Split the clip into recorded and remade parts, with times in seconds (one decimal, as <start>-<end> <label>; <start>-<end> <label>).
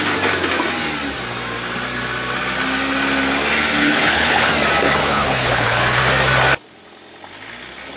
0.0-3.8 recorded; 3.8-4.5 remade; 4.5-5.0 recorded; 5.0-6.0 remade; 6.0-8.0 recorded